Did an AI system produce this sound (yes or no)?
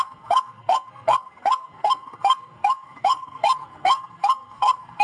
yes